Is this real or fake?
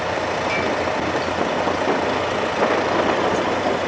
real